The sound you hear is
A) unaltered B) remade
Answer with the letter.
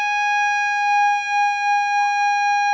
A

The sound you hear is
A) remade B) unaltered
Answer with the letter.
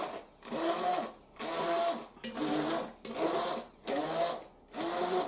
B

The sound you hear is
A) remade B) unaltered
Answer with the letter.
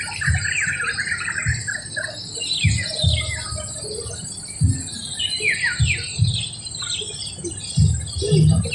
B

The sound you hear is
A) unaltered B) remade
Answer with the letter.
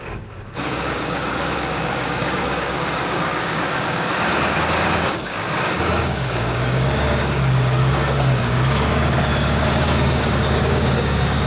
B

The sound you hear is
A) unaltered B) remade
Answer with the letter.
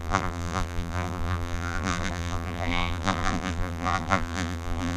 B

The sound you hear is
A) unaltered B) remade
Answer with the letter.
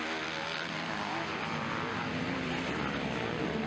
A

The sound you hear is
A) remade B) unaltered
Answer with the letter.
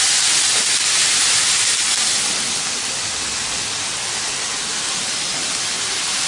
B